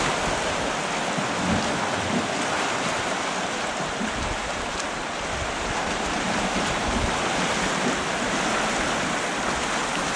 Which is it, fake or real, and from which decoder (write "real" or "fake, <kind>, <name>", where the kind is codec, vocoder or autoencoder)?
real